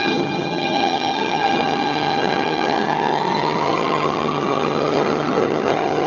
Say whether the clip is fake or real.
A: fake